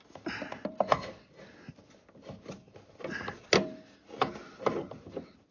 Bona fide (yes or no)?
yes